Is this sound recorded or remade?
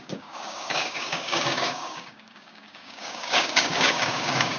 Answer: remade